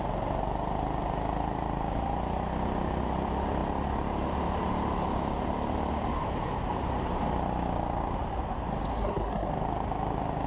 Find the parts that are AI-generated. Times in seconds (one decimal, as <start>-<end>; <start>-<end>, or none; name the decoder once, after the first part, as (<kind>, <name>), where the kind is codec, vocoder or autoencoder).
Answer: 8.9-9.5 (codec, SNAC)